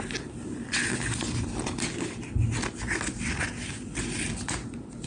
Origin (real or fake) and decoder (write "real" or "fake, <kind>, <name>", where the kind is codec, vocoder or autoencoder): real